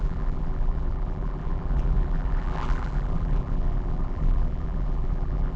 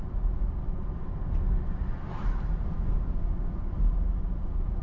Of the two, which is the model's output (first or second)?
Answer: first